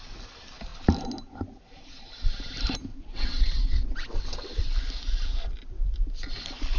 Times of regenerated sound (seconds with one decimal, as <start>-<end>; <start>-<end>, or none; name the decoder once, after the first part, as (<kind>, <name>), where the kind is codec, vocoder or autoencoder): 2.9-4.7 (vocoder, WaveNeXt)